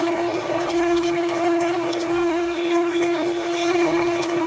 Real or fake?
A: fake